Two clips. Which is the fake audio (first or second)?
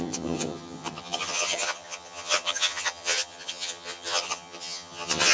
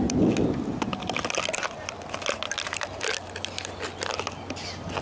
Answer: first